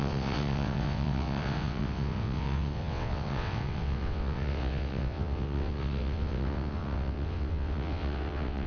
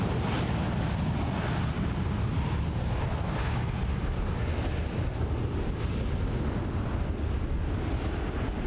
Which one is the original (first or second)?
second